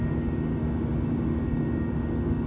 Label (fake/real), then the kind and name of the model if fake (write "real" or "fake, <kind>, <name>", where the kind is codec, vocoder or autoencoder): fake, codec, DAC